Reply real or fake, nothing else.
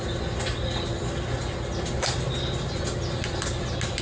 real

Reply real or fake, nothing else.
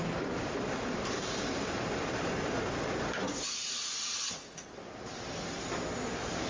fake